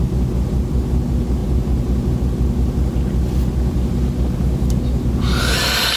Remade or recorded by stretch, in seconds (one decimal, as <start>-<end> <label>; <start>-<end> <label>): 0.0-6.0 recorded